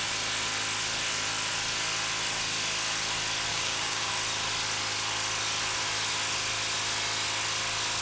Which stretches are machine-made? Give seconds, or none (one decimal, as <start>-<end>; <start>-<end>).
3.5-4.1